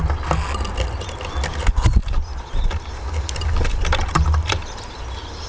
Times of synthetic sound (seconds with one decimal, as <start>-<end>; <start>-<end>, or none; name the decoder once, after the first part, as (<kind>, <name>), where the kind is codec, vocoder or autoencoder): none